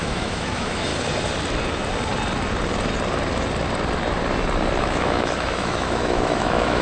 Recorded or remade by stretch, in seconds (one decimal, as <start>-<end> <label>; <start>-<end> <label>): 0.0-0.9 remade; 0.9-4.8 recorded; 4.8-6.8 remade